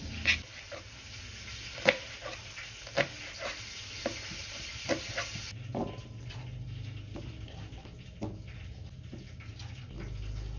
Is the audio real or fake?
real